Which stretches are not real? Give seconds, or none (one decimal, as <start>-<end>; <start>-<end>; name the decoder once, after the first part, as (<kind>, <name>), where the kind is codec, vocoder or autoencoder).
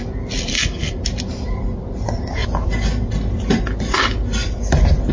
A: 0.5-1.0 (codec, SNAC)